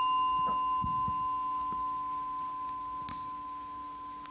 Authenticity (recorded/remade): recorded